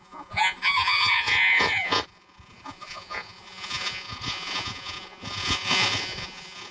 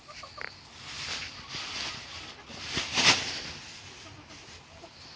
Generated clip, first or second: first